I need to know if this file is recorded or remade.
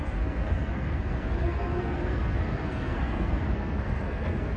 remade